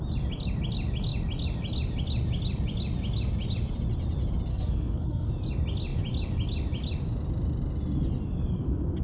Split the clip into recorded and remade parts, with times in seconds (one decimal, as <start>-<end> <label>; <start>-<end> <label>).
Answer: 0.0-4.5 recorded; 4.5-5.3 remade; 5.3-9.0 recorded

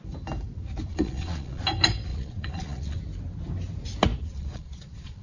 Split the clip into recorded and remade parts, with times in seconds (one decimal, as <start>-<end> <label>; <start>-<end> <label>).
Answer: 0.0-0.9 recorded; 0.9-1.6 remade; 1.6-2.1 recorded; 2.1-3.0 remade; 3.0-4.2 recorded; 4.2-5.2 remade

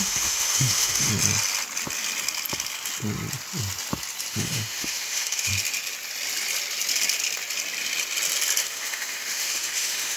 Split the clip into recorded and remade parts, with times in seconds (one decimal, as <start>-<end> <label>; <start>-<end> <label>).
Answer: 0.0-1.1 remade; 1.1-4.3 recorded; 4.3-5.5 remade; 5.5-8.6 recorded; 8.6-10.2 remade

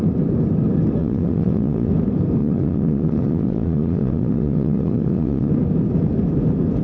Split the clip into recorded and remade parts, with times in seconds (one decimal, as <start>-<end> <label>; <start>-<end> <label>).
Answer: 0.0-1.0 recorded; 1.0-1.9 remade; 1.9-2.4 recorded; 2.4-5.5 remade; 5.5-6.8 recorded

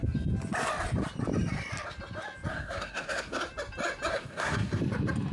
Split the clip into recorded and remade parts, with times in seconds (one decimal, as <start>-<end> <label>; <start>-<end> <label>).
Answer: 0.0-2.5 recorded; 2.5-3.4 remade; 3.4-4.1 recorded; 4.1-4.8 remade; 4.8-5.3 recorded

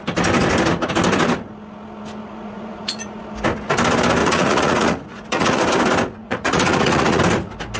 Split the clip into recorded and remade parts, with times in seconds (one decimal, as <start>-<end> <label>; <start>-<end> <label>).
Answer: 0.0-2.2 recorded; 2.2-3.2 remade; 3.2-4.2 recorded; 4.2-5.6 remade; 5.6-6.2 recorded; 6.2-7.2 remade; 7.2-7.8 recorded

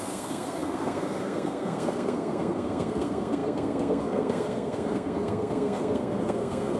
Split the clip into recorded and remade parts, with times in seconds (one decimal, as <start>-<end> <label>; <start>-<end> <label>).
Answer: 0.0-6.8 remade

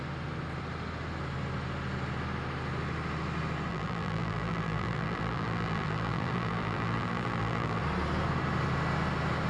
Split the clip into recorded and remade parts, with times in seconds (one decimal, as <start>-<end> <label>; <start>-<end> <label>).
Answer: 0.0-3.7 recorded; 3.7-7.8 remade; 7.8-9.5 recorded